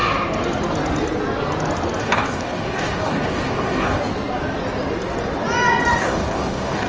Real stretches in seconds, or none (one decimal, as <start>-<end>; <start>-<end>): 0.0-2.0; 4.0-6.0

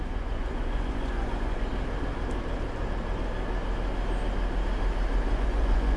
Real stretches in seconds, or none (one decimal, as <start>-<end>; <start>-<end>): 1.7-5.3

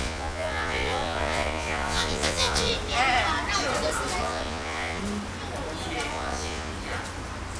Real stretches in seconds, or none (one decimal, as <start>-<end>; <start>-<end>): 2.7-4.2; 5.0-6.1; 6.7-7.6

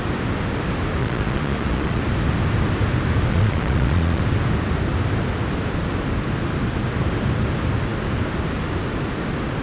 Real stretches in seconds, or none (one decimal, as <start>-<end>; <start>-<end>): 0.0-1.0; 2.0-3.3; 4.2-9.6

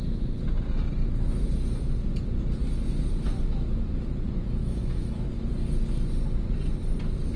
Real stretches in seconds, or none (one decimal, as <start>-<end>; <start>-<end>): 0.0-4.6; 5.3-7.4